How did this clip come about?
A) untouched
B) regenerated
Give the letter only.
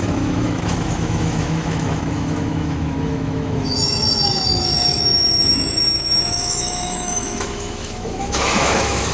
B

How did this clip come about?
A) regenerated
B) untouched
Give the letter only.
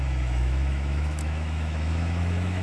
A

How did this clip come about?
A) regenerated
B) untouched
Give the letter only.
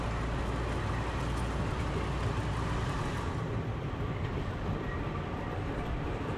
B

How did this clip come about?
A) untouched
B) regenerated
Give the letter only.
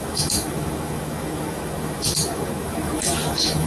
B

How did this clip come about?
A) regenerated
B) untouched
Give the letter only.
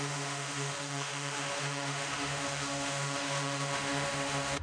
A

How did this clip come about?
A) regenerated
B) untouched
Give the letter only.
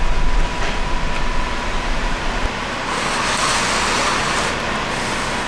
B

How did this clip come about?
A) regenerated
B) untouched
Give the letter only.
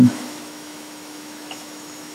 A